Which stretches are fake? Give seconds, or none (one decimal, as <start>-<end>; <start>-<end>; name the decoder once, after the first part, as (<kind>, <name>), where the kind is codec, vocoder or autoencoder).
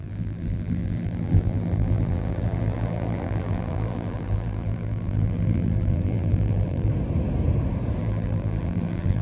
0.0-6.9 (vocoder, BigVGAN v2); 8.0-9.2